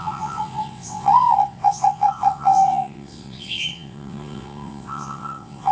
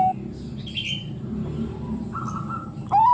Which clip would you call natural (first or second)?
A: second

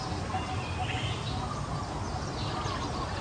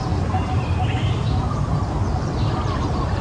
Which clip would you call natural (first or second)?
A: first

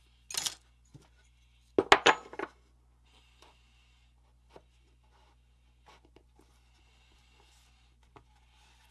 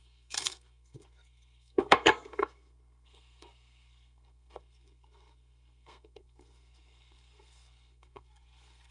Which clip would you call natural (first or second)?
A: first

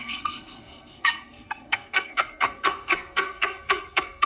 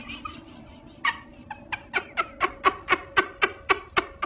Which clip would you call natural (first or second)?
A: second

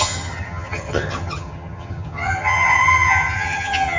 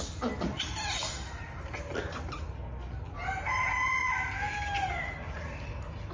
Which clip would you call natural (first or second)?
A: second